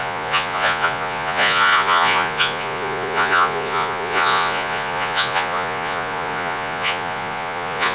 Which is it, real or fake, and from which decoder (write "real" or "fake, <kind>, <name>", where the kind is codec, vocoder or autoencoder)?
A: fake, vocoder, Vocos